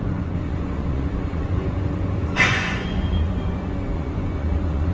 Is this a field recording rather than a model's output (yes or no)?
no